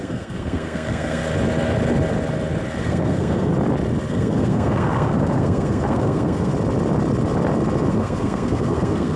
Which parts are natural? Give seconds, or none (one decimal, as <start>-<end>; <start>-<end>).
1.2-2.8; 3.5-4.1; 6.5-7.9